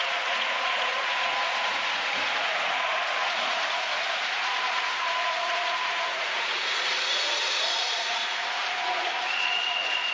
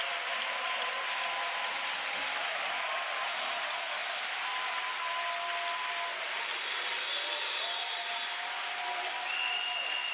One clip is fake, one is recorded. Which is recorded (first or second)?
second